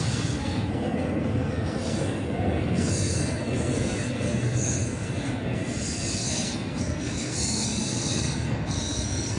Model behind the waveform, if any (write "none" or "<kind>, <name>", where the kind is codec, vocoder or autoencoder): codec, SNAC